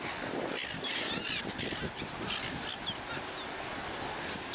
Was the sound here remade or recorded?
recorded